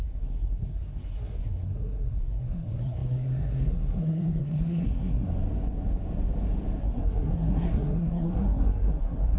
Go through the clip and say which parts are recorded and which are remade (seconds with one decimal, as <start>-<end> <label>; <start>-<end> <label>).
0.0-5.3 remade; 5.3-6.8 recorded; 6.8-9.4 remade

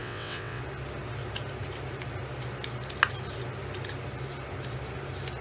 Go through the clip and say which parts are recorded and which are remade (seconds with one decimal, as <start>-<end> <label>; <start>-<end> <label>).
0.0-0.6 remade; 0.6-5.4 recorded